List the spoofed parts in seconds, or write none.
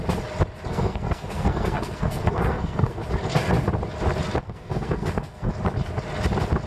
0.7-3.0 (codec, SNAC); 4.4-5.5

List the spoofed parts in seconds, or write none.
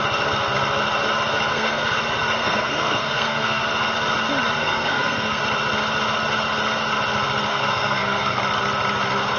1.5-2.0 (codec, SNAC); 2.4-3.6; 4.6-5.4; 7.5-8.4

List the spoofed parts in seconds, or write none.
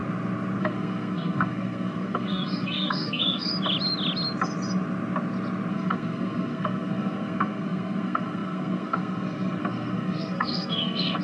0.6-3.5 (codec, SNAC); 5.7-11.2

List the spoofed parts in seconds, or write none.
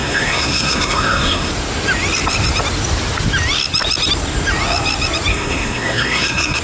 0.0-1.5 (codec, SNAC); 5.3-6.6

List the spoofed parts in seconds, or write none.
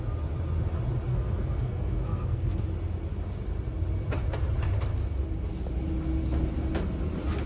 1.1-2.6 (codec, SNAC)